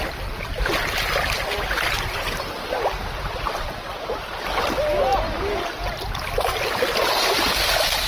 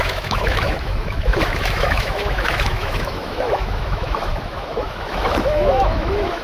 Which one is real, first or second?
first